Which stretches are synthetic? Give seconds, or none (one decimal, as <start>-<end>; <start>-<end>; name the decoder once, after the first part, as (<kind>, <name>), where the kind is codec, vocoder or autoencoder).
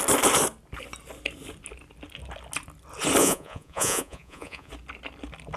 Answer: 3.2-4.7 (vocoder, Vocos)